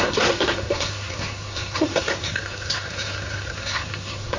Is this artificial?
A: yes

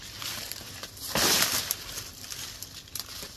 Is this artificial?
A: no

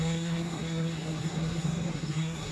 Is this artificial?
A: yes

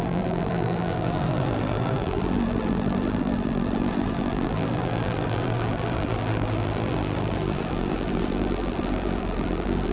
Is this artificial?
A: yes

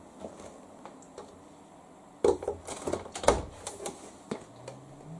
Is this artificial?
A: no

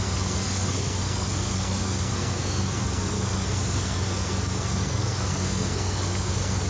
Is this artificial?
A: yes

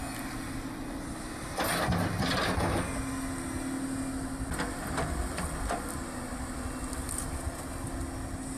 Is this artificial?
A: no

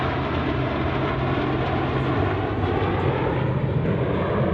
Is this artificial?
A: no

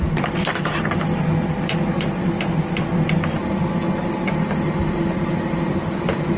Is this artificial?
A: no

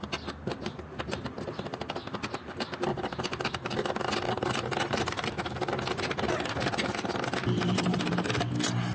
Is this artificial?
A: no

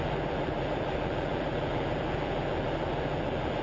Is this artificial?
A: yes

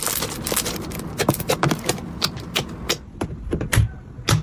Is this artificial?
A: no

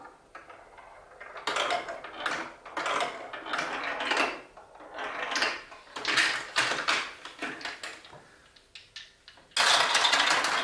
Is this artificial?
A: no